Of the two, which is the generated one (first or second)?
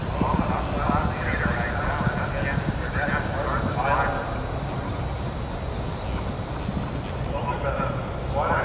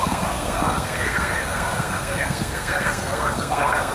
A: second